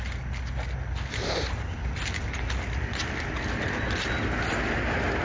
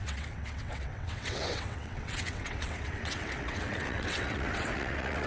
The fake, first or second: second